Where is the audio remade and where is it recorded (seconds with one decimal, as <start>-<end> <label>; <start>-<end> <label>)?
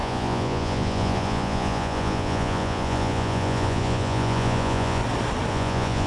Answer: 0.0-5.0 remade; 5.0-5.5 recorded; 5.5-6.1 remade